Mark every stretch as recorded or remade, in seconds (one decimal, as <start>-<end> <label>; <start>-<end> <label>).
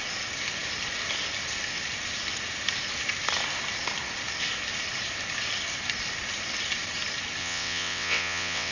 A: 0.0-7.4 recorded; 7.4-8.7 remade